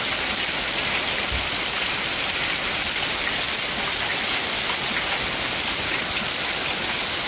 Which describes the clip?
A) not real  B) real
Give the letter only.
B